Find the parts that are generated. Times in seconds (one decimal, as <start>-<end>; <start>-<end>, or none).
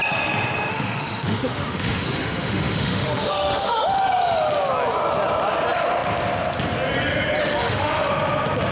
0.7-4.0; 7.4-8.1